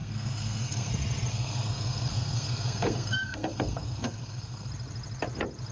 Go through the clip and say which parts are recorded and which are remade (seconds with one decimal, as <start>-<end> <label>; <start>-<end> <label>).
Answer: 0.0-0.9 remade; 0.9-1.3 recorded; 1.3-4.7 remade; 4.7-5.7 recorded